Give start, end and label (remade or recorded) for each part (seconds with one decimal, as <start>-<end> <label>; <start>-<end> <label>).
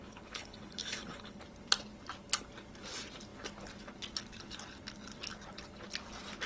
0.0-1.4 remade; 1.4-6.5 recorded